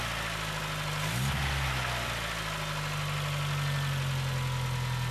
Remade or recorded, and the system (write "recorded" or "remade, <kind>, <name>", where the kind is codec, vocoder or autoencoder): recorded